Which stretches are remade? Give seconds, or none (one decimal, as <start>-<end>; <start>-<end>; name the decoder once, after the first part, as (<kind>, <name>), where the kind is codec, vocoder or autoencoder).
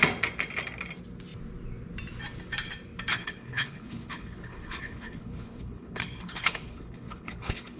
3.1-7.8 (codec, HILCodec)